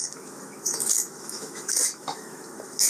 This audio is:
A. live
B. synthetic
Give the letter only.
B